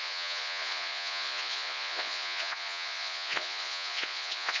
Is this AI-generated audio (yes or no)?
yes